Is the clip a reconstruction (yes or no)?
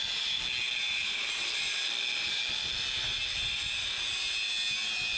no